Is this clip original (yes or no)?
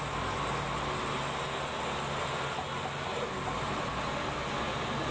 yes